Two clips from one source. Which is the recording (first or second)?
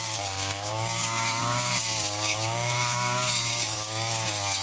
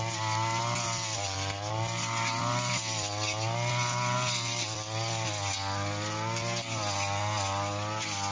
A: second